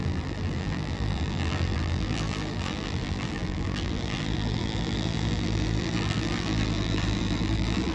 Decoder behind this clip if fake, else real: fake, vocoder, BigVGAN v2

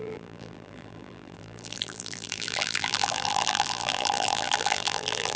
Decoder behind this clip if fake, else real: fake, vocoder, BigVGAN v2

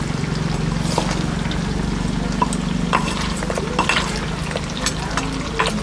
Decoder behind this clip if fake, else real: real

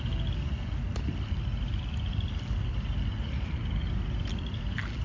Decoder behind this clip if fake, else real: real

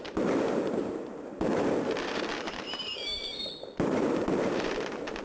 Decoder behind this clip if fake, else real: fake, vocoder, BigVGAN v2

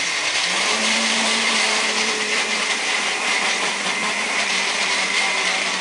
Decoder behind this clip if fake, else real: fake, vocoder, BigVGAN v2